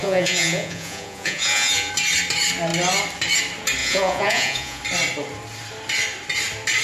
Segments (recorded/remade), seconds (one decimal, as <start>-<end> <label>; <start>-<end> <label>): 0.0-1.9 remade; 1.9-3.8 recorded; 3.8-4.8 remade; 4.8-6.8 recorded

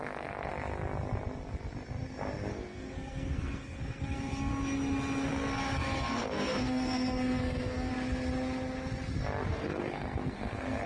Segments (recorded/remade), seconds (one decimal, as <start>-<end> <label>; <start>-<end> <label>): 0.0-0.5 remade; 0.5-2.5 recorded; 2.5-4.5 remade; 4.5-5.3 recorded; 5.3-7.9 remade; 7.9-9.5 recorded; 9.5-10.9 remade

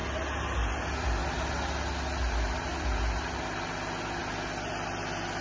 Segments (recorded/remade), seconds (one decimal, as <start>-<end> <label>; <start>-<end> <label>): 0.0-5.4 recorded

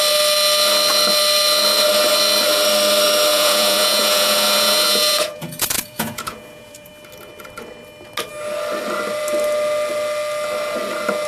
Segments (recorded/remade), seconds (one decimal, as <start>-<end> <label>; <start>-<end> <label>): 0.0-3.3 recorded; 3.3-6.9 remade; 6.9-11.3 recorded

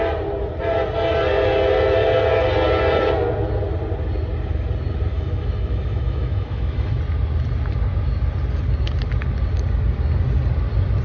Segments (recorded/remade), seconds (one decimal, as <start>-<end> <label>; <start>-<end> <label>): 0.0-5.1 recorded; 5.1-7.0 remade; 7.0-11.0 recorded

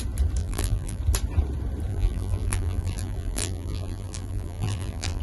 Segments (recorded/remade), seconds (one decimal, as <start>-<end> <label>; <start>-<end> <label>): 0.0-0.4 recorded; 0.4-1.0 remade; 1.0-1.9 recorded; 1.9-5.2 remade

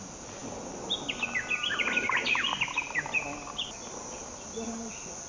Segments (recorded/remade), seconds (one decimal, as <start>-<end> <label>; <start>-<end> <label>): 0.0-5.3 recorded

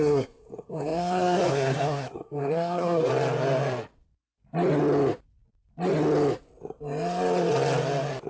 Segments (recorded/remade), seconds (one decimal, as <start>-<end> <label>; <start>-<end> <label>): 0.0-3.1 remade; 3.1-8.3 recorded